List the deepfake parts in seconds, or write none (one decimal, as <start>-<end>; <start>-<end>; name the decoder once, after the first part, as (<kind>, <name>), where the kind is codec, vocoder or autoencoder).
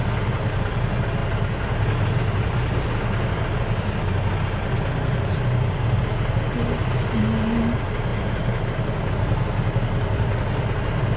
none